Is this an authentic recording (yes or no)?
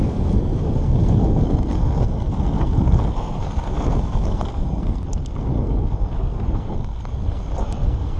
no